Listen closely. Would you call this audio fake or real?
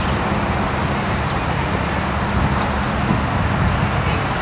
real